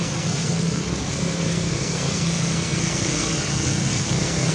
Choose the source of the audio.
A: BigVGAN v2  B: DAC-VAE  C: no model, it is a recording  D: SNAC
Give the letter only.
D